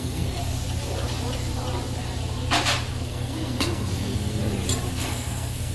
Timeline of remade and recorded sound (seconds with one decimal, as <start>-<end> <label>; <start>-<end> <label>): 0.0-0.4 remade; 0.4-2.9 recorded; 2.9-4.4 remade; 4.4-4.9 recorded; 4.9-5.7 remade